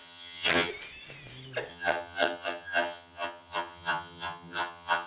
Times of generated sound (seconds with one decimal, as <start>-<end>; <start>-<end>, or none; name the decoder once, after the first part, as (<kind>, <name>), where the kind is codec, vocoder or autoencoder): 0.0-0.7 (vocoder, HiFi-GAN); 1.7-5.1